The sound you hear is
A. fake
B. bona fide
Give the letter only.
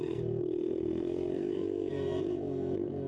A